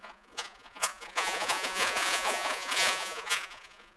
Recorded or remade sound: remade